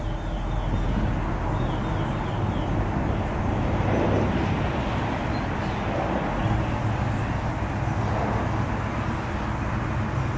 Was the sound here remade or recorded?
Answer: recorded